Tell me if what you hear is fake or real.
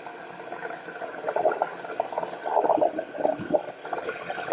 real